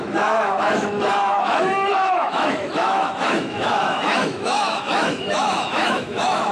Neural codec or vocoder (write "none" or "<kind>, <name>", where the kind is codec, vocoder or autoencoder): autoencoder, DAC-VAE